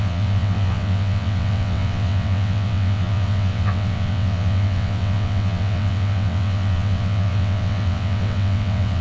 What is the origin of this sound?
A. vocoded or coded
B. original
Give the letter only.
A